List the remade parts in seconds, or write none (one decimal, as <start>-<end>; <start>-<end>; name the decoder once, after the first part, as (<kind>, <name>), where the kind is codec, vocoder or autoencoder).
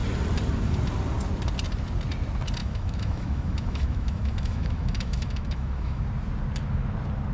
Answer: 2.6-6.0 (autoencoder, DAC-VAE)